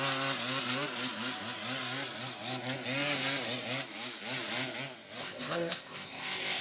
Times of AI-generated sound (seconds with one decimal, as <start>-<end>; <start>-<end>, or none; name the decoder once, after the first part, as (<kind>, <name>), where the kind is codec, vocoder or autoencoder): 5.2-6.6 (codec, ZipCodec)